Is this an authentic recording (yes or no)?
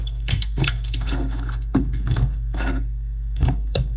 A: no